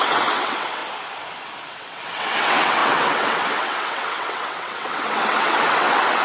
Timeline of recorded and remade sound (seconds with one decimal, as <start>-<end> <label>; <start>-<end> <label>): 0.0-0.8 remade; 0.8-1.7 recorded; 1.7-6.2 remade